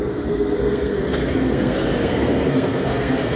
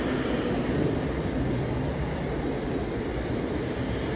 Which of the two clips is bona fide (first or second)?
second